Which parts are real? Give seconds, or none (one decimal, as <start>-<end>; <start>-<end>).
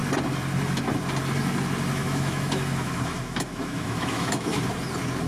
0.0-2.0; 4.6-5.3